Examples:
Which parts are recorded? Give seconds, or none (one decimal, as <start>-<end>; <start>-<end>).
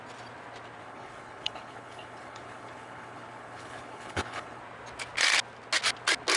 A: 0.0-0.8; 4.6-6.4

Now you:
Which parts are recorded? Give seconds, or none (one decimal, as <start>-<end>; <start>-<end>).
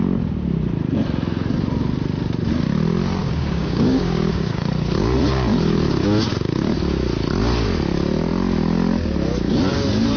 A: 0.0-3.2; 4.6-10.2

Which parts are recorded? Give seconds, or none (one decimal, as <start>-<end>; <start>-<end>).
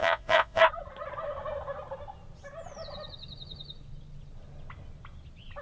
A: 0.6-5.6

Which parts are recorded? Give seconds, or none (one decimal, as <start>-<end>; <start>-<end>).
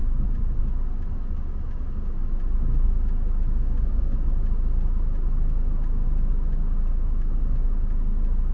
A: 0.6-8.5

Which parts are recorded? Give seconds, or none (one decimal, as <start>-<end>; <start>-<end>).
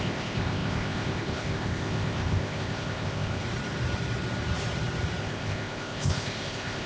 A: 3.4-5.2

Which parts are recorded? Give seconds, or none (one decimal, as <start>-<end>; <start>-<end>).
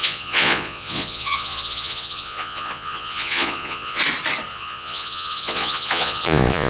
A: 4.0-4.5